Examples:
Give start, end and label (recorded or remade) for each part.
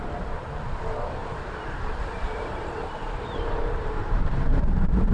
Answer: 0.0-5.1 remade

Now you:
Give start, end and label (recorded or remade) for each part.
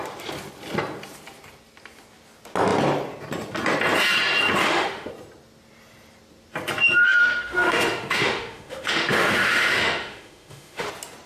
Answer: 0.0-4.6 recorded; 4.6-5.1 remade; 5.1-7.2 recorded; 7.2-10.9 remade; 10.9-11.3 recorded